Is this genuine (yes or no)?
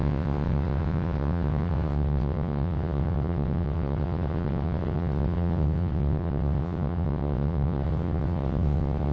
no